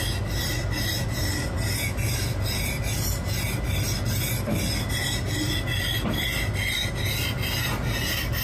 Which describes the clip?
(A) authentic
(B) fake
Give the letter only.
A